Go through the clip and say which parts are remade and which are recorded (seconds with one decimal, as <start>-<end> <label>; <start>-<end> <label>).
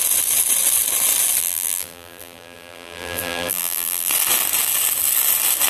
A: 0.0-1.4 recorded; 1.4-4.1 remade; 4.1-5.7 recorded